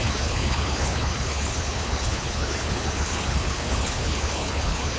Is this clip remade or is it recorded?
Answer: remade